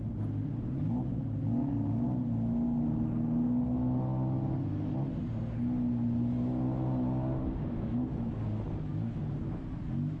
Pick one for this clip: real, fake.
real